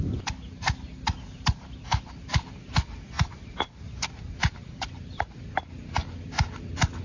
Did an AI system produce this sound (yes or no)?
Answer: no